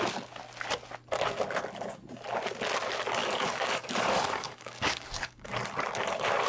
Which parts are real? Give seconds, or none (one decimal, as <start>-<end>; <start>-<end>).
0.0-3.2; 5.5-6.5